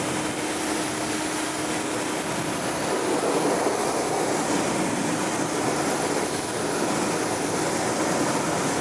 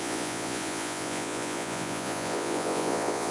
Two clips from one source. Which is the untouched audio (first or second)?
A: first